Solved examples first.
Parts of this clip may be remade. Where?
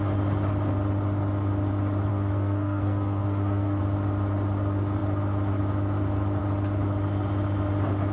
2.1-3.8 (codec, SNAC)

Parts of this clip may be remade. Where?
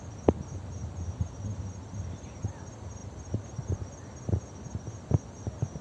3.0-5.3 (vocoder, BigVGAN v2)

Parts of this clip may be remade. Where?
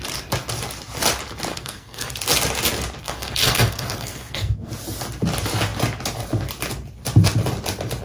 1.5-2.1 (codec, SNAC); 3.0-4.7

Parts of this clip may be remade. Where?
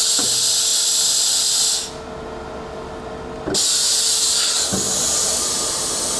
none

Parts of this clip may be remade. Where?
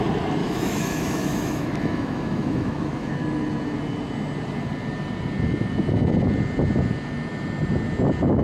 0.4-3.1 (autoencoder, DAC-VAE)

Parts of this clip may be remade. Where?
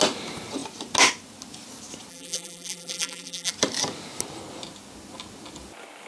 2.1-3.5 (vocoder, BigVGAN v2)